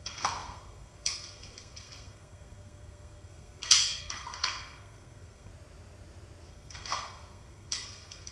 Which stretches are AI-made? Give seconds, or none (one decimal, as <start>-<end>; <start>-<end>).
0.0-5.5; 6.5-8.3